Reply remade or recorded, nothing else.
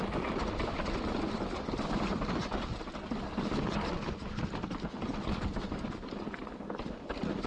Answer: recorded